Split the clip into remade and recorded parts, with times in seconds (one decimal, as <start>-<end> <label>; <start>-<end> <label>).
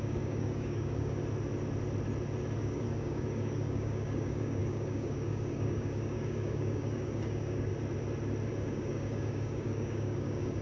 0.0-1.2 remade; 1.2-2.6 recorded; 2.6-7.7 remade; 7.7-8.5 recorded; 8.5-10.6 remade